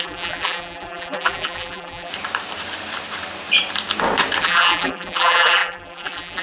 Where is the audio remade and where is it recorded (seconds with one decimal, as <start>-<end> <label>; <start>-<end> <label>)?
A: 0.0-2.1 remade; 2.1-4.4 recorded; 4.4-6.4 remade